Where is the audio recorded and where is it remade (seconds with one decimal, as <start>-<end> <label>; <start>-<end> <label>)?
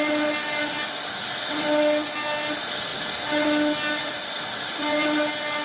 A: 0.0-5.6 recorded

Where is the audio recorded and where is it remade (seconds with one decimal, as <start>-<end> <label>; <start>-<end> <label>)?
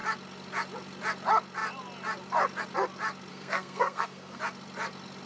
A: 0.0-3.3 recorded; 3.3-4.4 remade; 4.4-5.3 recorded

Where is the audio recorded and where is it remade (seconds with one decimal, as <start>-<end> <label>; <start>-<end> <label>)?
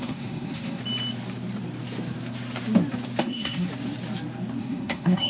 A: 0.0-0.8 remade; 0.8-3.2 recorded; 3.2-3.7 remade; 3.7-4.6 recorded; 4.6-5.3 remade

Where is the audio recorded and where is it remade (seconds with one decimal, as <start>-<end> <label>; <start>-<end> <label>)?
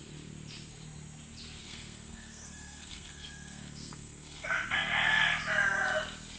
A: 0.0-1.6 recorded; 1.6-5.4 remade; 5.4-6.4 recorded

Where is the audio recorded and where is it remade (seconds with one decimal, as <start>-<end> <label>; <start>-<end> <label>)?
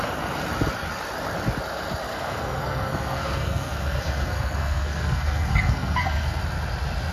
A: 0.0-2.1 recorded; 2.1-6.4 remade; 6.4-7.1 recorded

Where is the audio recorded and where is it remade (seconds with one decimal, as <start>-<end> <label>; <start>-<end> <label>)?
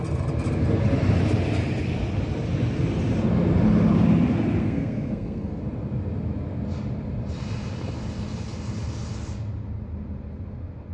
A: 0.0-4.6 recorded; 4.6-5.6 remade; 5.6-10.9 recorded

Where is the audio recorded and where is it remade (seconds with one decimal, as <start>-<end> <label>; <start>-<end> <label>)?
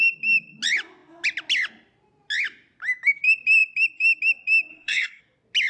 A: 0.0-4.7 recorded; 4.7-5.2 remade; 5.2-5.7 recorded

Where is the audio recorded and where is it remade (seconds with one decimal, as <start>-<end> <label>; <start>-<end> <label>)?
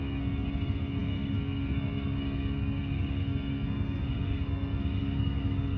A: 0.0-5.8 remade